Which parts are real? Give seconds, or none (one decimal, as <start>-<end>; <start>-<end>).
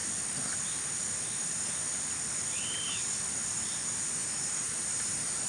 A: 0.0-4.2